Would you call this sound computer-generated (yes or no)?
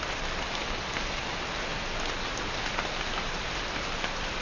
no